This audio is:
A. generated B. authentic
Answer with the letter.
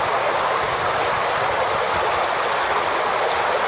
B